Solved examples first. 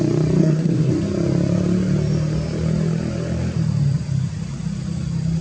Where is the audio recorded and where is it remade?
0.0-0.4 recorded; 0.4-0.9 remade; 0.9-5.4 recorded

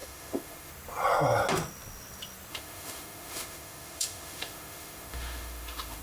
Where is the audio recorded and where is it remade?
0.0-0.7 remade; 0.7-2.5 recorded; 2.5-6.0 remade

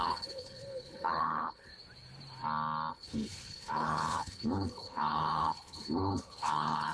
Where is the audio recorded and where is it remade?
0.0-1.7 remade; 1.7-2.9 recorded; 2.9-6.9 remade

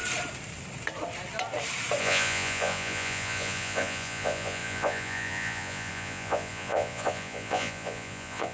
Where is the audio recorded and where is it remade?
0.0-2.0 recorded; 2.0-8.5 remade

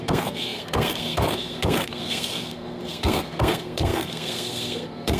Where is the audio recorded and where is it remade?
0.0-5.2 remade

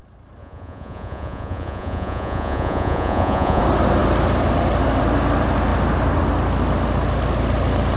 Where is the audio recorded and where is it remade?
0.0-0.4 recorded; 0.4-3.6 remade; 3.6-8.0 recorded

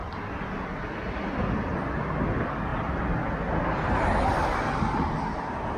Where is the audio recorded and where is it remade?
0.0-5.8 recorded